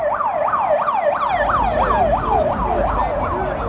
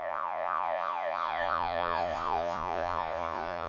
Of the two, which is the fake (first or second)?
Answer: second